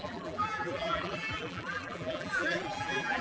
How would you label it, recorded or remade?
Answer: remade